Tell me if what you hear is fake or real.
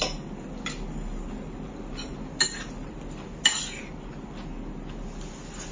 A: real